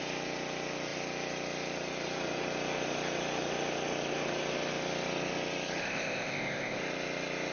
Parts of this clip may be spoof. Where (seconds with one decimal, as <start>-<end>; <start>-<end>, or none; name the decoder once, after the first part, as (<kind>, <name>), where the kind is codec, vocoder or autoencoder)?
5.8-6.8 (codec, ZipCodec)